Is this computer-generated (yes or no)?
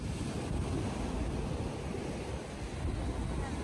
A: no